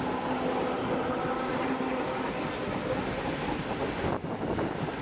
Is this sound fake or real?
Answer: real